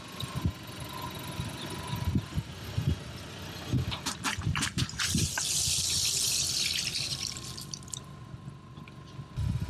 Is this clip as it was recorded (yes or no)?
yes